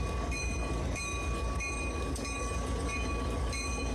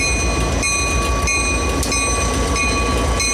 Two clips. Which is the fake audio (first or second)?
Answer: first